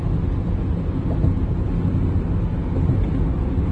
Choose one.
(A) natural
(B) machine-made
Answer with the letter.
A